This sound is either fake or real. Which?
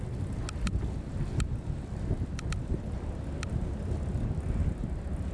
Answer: real